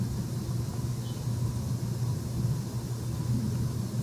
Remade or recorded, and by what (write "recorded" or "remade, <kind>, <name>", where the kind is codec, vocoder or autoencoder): recorded